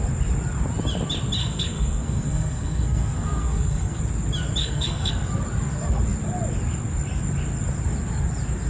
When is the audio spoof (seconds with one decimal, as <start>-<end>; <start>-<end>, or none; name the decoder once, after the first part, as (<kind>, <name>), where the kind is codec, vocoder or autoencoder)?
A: 1.4-4.0 (codec, SNAC); 4.6-5.1